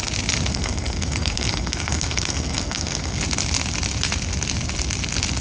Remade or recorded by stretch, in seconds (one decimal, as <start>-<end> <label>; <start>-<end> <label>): 0.0-0.5 recorded; 0.5-3.2 remade; 3.2-5.4 recorded